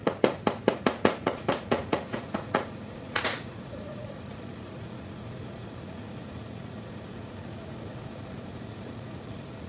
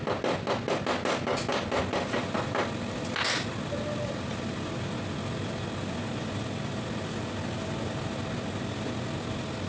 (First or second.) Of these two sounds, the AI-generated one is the first